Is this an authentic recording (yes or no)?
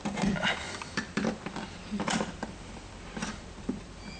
no